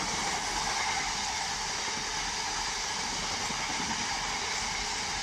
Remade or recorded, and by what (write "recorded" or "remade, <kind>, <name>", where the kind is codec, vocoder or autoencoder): recorded